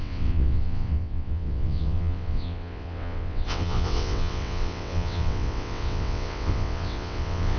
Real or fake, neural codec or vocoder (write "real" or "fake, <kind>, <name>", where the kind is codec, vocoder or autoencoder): fake, vocoder, WaveNeXt